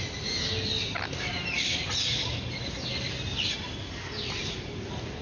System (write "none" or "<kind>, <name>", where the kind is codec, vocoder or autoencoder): none